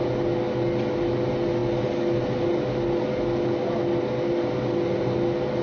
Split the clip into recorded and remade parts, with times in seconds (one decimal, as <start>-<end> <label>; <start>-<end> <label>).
0.0-5.6 recorded